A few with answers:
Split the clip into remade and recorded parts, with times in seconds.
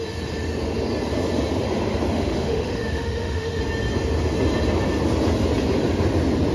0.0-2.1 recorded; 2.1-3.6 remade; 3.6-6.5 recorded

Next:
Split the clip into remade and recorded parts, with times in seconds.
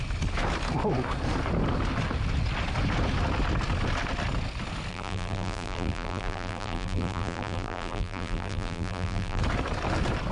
0.0-4.9 recorded; 4.9-9.4 remade; 9.4-10.3 recorded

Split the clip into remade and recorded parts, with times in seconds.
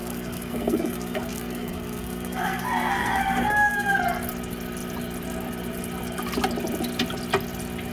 0.0-4.0 remade; 4.0-7.9 recorded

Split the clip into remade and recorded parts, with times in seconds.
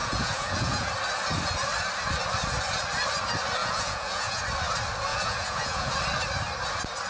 0.0-0.9 remade; 0.9-3.6 recorded; 3.6-4.4 remade; 4.4-5.1 recorded; 5.1-5.9 remade; 5.9-7.1 recorded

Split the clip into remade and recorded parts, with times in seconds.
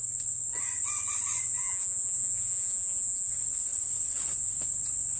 0.0-1.6 recorded; 1.6-3.3 remade; 3.3-5.2 recorded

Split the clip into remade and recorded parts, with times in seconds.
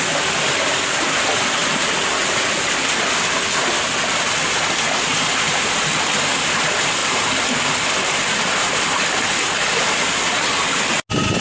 0.0-11.4 recorded